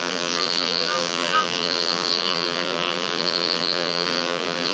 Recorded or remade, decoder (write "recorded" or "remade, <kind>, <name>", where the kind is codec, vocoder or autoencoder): remade, vocoder, BigVGAN v2